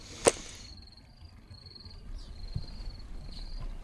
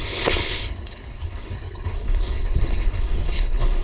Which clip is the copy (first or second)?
second